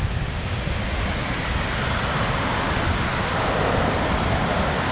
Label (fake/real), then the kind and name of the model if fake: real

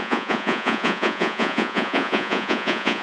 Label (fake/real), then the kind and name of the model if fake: fake, vocoder, Vocos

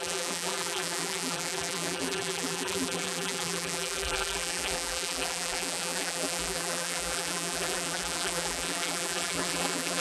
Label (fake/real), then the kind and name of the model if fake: fake, vocoder, BigVGAN v2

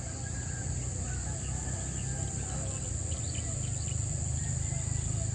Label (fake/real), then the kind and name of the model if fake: real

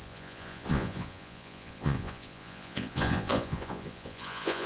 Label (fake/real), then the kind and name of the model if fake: fake, vocoder, Vocos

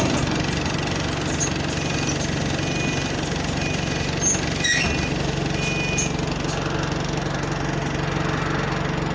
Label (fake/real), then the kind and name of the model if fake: real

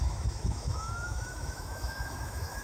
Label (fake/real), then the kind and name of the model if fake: fake, autoencoder, DAC-VAE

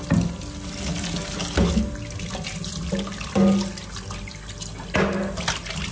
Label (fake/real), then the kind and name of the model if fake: real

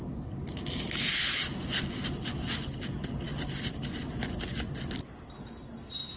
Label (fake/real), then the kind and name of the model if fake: real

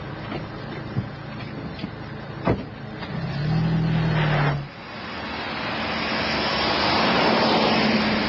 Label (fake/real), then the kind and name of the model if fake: real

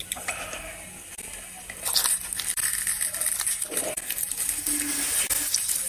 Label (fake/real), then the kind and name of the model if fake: real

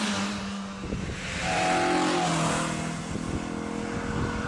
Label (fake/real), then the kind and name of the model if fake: real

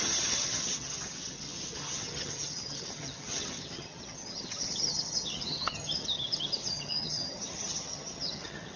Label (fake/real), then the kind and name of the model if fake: fake, vocoder, HiFi-GAN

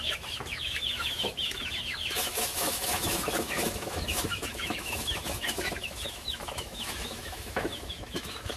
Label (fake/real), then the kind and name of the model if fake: fake, autoencoder, DAC-VAE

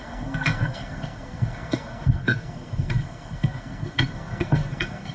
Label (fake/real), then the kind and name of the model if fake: fake, codec, SNAC